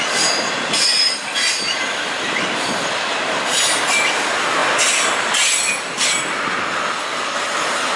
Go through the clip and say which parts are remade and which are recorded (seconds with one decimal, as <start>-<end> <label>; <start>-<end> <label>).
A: 0.0-8.0 recorded